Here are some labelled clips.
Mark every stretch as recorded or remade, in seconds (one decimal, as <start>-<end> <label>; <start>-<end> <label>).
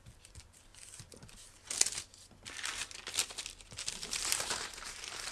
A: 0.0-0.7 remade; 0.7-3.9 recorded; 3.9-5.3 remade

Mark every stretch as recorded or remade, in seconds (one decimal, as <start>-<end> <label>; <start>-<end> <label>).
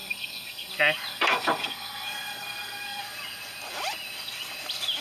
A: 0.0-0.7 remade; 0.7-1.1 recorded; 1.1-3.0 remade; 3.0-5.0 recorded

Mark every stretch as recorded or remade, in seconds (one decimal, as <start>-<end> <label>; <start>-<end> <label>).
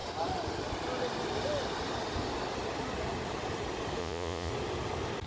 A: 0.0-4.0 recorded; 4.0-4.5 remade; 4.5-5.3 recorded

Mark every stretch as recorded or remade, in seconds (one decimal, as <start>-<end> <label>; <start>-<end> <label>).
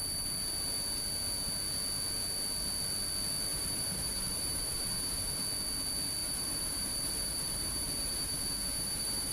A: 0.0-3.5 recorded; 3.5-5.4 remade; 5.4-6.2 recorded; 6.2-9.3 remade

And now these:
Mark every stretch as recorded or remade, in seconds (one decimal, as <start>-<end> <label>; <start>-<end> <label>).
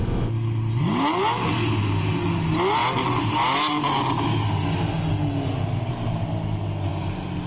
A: 0.0-7.5 recorded